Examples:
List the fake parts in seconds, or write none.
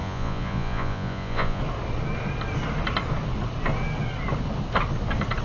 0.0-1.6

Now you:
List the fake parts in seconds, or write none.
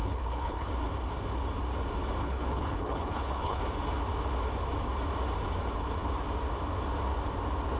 0.0-0.7; 2.2-3.6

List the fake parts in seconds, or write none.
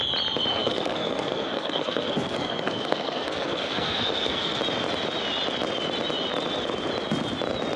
0.5-4.6